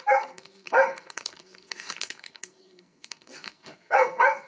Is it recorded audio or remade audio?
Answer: remade